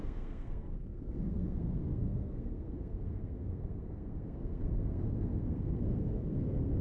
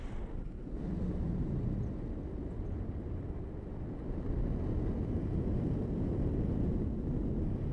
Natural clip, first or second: second